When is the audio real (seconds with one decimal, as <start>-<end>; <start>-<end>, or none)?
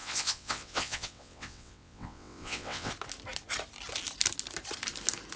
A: 2.9-5.4